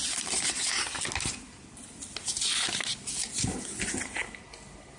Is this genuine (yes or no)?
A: yes